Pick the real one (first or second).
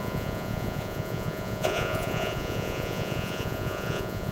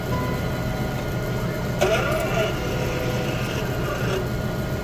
second